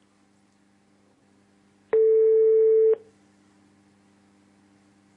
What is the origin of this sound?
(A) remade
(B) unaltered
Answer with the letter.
B